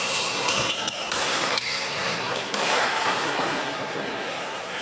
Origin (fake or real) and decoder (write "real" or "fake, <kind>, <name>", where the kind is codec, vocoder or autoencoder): fake, codec, SNAC